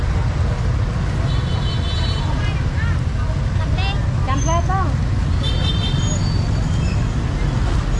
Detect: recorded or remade recorded